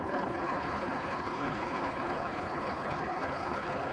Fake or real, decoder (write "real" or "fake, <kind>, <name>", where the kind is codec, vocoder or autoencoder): fake, codec, HILCodec